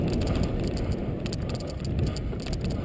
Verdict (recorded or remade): recorded